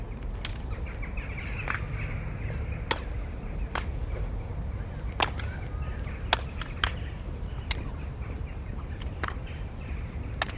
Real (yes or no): yes